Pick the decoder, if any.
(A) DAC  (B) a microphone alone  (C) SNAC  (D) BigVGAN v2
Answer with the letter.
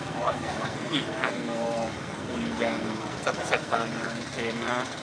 C